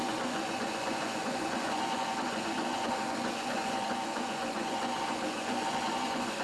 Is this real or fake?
fake